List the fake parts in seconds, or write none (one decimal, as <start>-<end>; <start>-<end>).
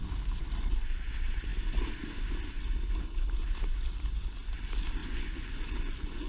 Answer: 5.0-6.3